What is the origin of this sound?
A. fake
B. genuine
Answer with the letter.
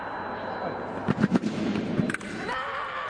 B